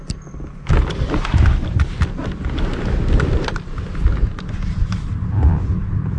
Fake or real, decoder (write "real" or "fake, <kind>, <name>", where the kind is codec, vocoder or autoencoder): real